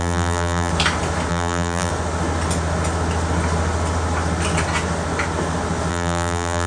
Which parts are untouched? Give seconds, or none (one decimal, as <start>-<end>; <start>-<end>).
0.7-1.3; 1.9-5.9